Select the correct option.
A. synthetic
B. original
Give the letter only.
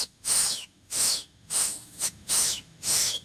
A